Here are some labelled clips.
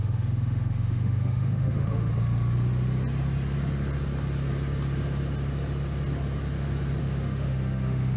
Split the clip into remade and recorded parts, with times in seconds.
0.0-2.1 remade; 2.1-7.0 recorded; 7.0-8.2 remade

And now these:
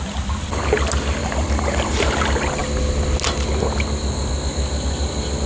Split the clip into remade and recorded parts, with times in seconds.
0.0-1.2 recorded; 1.2-2.2 remade; 2.2-5.5 recorded